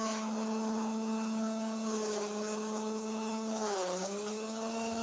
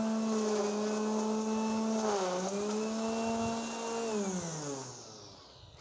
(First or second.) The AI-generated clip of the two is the first